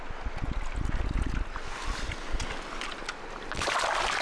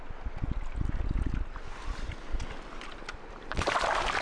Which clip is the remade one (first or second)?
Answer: second